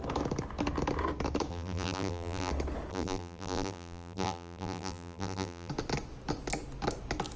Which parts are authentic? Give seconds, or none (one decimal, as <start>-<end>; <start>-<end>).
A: 0.0-1.5; 2.5-2.9; 5.7-7.4